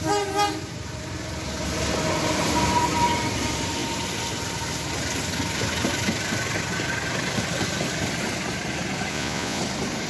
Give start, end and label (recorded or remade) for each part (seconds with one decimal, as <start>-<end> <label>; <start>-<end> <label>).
0.0-9.1 recorded; 9.1-9.6 remade; 9.6-10.1 recorded